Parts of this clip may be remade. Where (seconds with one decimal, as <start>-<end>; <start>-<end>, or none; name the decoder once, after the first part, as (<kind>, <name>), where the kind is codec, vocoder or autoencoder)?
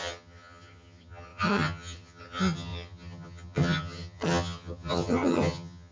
0.0-5.9 (vocoder, HiFi-GAN)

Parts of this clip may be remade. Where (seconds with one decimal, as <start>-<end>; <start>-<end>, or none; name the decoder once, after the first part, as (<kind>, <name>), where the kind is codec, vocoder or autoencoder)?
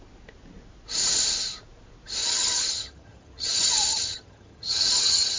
2.2-5.4 (vocoder, HiFi-GAN)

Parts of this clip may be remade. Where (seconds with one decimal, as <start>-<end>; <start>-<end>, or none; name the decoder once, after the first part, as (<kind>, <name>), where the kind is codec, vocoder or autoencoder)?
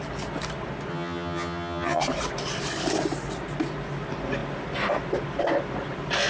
0.9-2.0 (vocoder, HiFi-GAN)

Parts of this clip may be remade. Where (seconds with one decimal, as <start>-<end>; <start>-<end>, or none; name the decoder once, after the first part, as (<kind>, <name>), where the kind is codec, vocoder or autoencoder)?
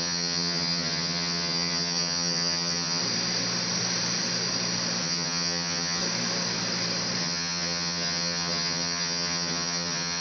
0.0-3.0 (vocoder, HiFi-GAN); 5.0-6.0; 7.2-10.2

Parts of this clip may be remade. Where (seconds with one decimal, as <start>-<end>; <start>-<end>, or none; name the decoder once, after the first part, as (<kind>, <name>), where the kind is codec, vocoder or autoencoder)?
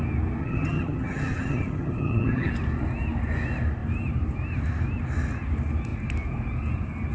0.4-2.5 (vocoder, HiFi-GAN)